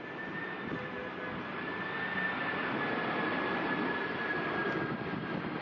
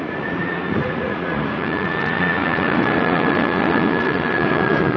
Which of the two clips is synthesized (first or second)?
second